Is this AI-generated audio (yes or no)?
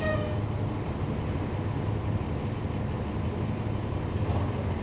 no